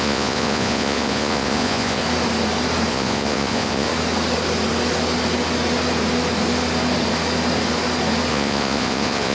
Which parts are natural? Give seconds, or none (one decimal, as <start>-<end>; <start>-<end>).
2.0-2.9; 3.9-8.3